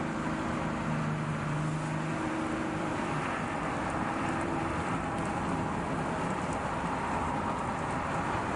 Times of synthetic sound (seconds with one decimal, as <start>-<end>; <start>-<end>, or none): 2.1-5.1